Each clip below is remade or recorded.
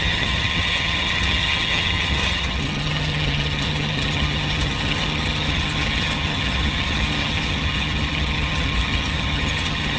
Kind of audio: remade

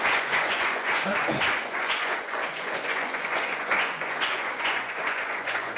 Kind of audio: remade